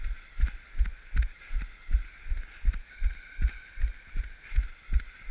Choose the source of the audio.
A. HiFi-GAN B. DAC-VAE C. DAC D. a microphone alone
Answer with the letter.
D